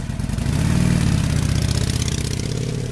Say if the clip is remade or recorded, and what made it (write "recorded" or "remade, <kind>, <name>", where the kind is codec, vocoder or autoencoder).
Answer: recorded